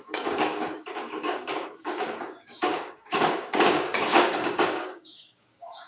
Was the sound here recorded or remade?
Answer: remade